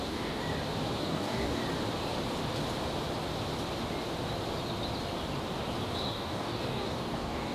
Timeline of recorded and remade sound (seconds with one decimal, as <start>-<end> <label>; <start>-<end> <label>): 0.0-0.4 remade; 0.4-1.0 recorded; 1.0-1.6 remade; 1.6-6.1 recorded; 6.1-7.5 remade